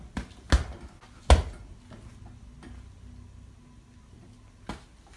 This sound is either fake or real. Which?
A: real